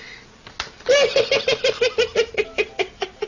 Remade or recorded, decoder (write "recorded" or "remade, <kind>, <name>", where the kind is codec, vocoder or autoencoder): recorded